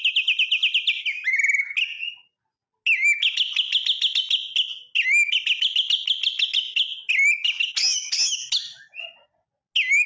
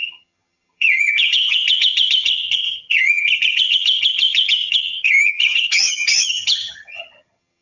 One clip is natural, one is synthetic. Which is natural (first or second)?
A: first